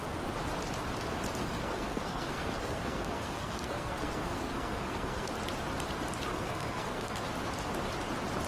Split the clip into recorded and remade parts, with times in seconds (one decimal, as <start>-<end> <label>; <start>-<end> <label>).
0.0-1.4 recorded; 1.4-5.3 remade; 5.3-6.3 recorded; 6.3-7.2 remade; 7.2-8.5 recorded